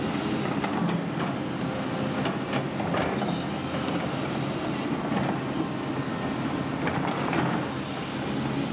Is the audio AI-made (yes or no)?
no